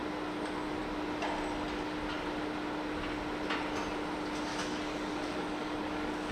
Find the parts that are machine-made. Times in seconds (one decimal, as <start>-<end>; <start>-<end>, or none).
4.5-6.3